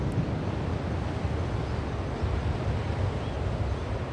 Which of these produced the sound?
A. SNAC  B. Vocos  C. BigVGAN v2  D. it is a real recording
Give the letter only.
D